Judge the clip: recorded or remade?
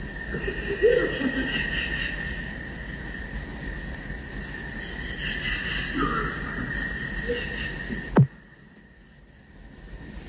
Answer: recorded